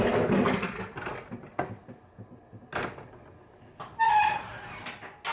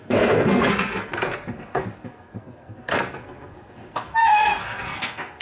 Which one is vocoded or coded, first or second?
second